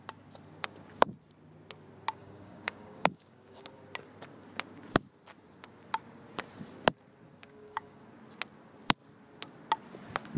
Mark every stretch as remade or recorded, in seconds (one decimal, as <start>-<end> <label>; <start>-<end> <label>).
0.0-2.2 recorded; 2.2-3.7 remade; 3.7-7.3 recorded; 7.3-8.0 remade; 8.0-10.4 recorded